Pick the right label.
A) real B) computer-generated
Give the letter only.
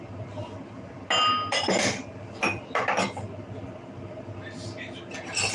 A